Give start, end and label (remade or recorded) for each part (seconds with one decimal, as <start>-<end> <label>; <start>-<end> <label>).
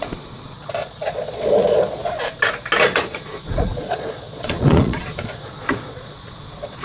0.0-2.0 remade; 2.0-2.8 recorded; 2.8-6.8 remade